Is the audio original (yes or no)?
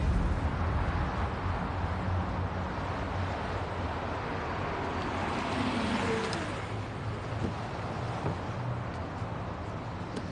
yes